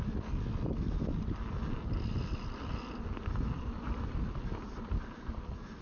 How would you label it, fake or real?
real